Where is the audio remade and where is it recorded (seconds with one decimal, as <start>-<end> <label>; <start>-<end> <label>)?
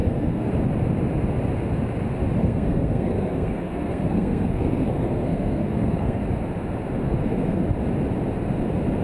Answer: 0.0-0.5 remade; 0.5-2.4 recorded; 2.4-6.2 remade; 6.2-7.0 recorded; 7.0-7.6 remade; 7.6-9.0 recorded